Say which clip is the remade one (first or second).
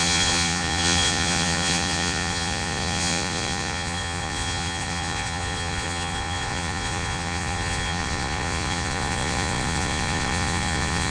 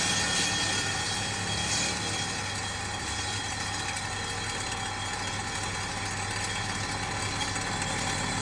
first